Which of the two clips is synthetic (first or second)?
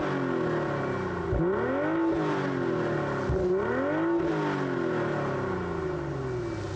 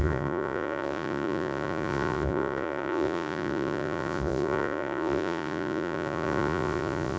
second